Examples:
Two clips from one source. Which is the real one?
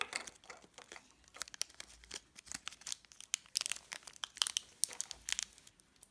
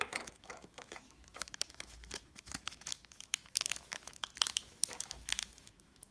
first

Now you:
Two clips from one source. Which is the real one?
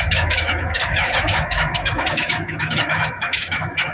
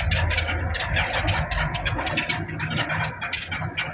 second